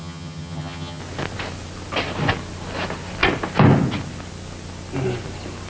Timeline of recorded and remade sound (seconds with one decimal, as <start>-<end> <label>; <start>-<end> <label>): 0.0-1.0 remade; 1.0-5.7 recorded